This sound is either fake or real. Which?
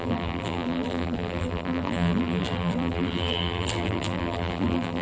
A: fake